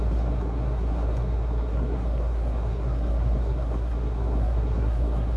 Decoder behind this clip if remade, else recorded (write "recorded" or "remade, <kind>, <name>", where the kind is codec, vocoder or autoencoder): remade, codec, SNAC